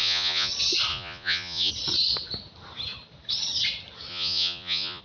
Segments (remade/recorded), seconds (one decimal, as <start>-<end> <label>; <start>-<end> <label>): 0.0-0.5 remade; 0.5-0.9 recorded; 0.9-1.7 remade; 1.7-4.1 recorded; 4.1-5.0 remade